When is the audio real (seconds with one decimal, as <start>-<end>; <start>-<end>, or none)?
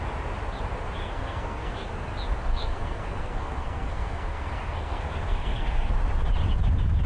0.0-1.0; 1.9-2.5; 5.9-7.1